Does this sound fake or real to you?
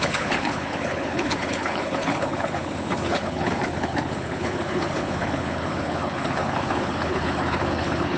fake